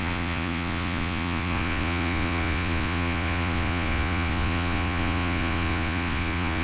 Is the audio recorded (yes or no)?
no